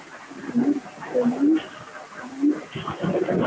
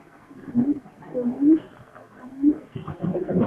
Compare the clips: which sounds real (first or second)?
first